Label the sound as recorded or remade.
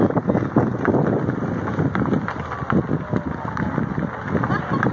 recorded